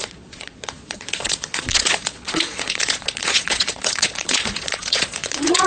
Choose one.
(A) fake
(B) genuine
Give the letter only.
A